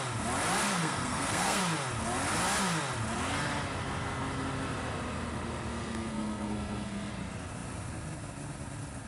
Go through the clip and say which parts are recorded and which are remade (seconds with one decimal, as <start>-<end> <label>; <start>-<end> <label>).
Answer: 0.0-0.7 recorded; 0.7-1.6 remade; 1.6-5.7 recorded; 5.7-7.1 remade; 7.1-9.1 recorded